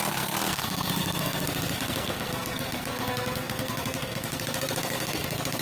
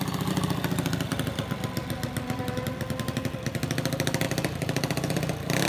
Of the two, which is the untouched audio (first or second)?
second